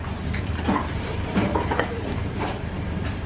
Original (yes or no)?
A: no